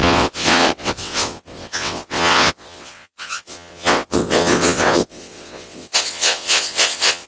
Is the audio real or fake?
fake